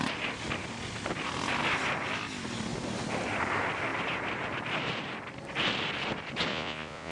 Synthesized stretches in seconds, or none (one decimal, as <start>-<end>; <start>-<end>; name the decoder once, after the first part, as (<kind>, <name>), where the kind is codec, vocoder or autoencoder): 6.5-7.1 (vocoder, Vocos)